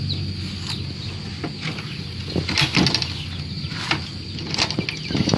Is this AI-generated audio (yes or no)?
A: no